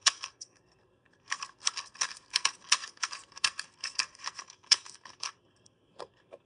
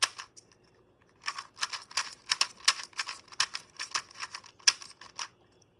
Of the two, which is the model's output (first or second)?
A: first